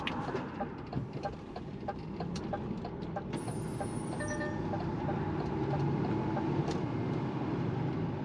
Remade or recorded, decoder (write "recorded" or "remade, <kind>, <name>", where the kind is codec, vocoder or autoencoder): remade, vocoder, BigVGAN v2